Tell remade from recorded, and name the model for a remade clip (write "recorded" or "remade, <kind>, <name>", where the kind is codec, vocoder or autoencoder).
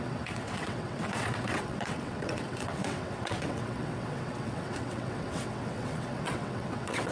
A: remade, vocoder, WaveNeXt